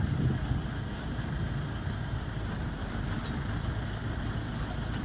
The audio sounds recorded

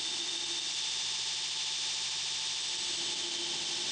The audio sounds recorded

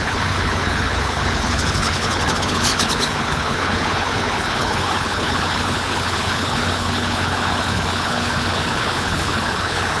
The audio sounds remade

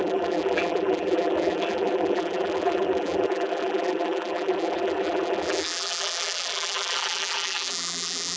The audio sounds remade